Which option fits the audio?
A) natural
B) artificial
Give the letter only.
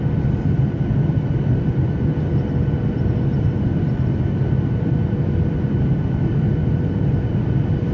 A